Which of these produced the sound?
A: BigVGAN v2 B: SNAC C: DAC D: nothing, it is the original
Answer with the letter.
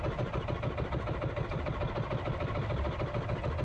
D